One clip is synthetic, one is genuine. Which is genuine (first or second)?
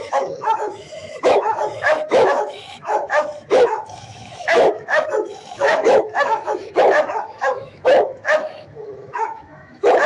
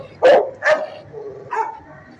second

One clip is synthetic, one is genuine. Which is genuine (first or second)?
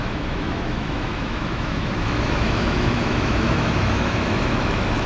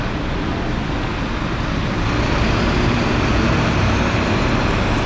second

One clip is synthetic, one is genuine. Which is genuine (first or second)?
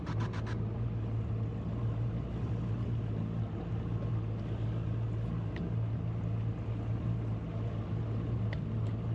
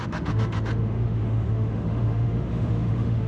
first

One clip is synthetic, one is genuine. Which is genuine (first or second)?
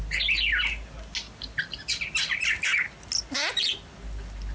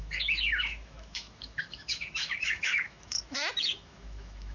first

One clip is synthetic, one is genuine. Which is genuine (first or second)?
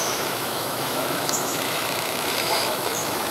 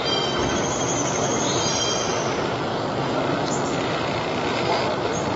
second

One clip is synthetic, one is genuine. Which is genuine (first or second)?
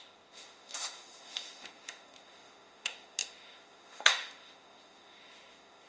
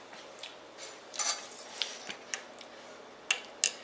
second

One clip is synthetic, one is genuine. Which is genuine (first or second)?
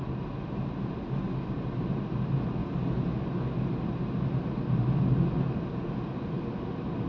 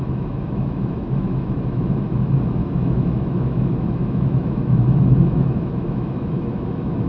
first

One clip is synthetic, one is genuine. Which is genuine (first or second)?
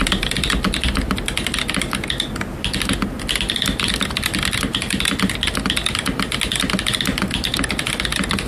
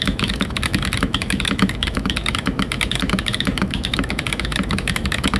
first